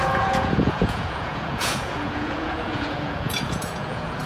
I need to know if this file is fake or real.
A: fake